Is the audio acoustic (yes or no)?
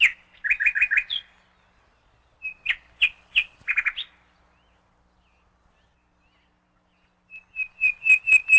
yes